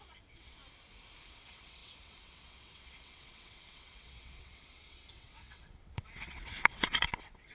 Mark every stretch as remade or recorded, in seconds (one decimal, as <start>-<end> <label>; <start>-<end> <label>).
0.0-0.6 remade; 0.6-1.3 recorded; 1.3-7.5 remade